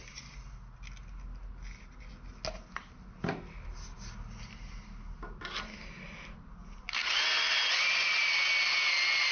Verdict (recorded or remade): recorded